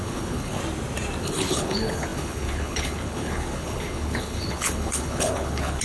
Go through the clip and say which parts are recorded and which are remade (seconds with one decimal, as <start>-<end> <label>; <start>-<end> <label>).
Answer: 0.0-0.6 remade; 0.6-1.2 recorded; 1.2-5.8 remade